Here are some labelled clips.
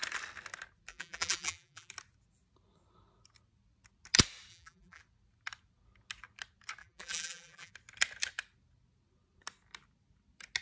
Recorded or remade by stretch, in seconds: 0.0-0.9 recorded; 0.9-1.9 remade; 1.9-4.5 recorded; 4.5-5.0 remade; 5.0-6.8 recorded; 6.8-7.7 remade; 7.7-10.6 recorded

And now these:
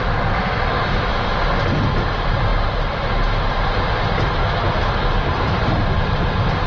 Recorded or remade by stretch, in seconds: 0.0-6.7 recorded

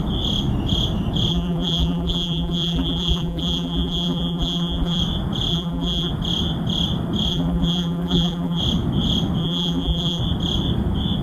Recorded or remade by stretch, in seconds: 0.0-1.3 recorded; 1.3-5.0 remade; 5.0-5.5 recorded; 5.5-6.1 remade; 6.1-7.3 recorded; 7.3-8.6 remade; 8.6-9.4 recorded; 9.4-10.2 remade; 10.2-11.2 recorded

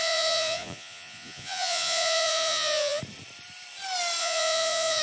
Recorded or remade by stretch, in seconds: 0.0-3.0 remade; 3.0-4.2 recorded; 4.2-5.0 remade

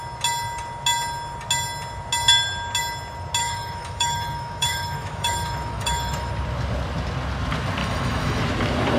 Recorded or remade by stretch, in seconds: 0.0-3.4 recorded; 3.4-6.3 remade; 6.3-7.8 recorded; 7.8-8.4 remade; 8.4-9.0 recorded

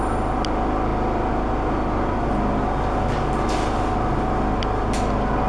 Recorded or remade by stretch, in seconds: 0.0-5.5 recorded